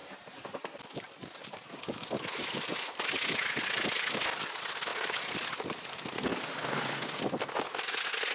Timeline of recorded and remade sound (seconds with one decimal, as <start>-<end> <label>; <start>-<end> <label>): 0.0-8.3 recorded